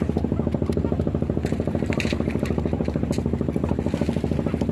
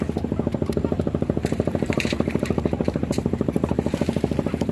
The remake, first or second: second